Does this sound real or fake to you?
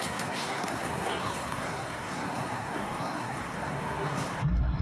fake